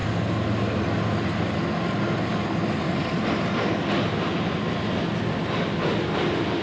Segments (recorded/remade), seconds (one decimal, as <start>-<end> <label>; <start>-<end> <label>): 0.0-6.6 recorded